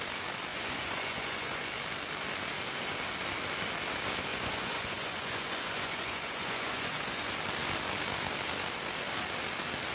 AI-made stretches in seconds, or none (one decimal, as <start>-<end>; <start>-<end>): 0.5-1.7; 4.3-7.3